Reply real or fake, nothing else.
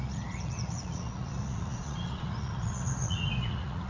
fake